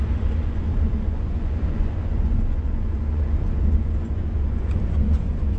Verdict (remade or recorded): remade